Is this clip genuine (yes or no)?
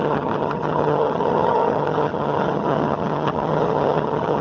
no